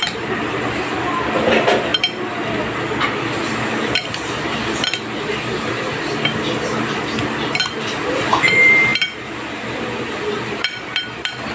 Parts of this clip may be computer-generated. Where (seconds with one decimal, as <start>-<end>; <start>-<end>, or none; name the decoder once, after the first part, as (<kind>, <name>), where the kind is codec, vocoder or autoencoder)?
0.0-1.9 (vocoder, BigVGAN v2); 3.7-8.9; 9.8-11.5